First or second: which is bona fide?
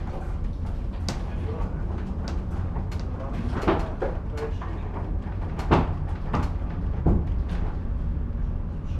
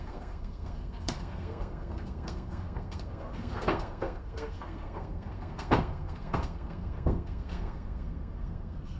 first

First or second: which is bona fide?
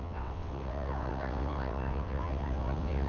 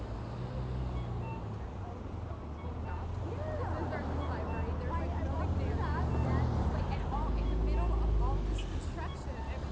second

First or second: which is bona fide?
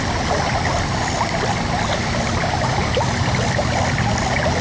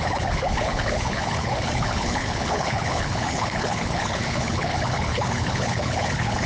first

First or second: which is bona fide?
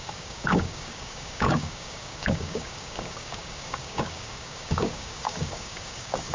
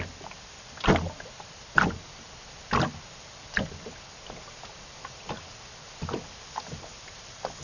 second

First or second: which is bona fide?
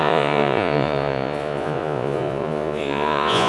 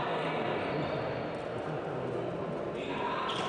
second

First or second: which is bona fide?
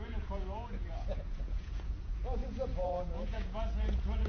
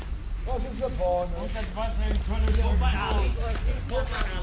second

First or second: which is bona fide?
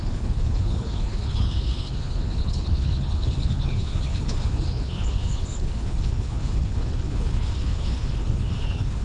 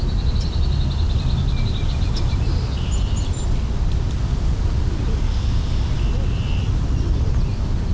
second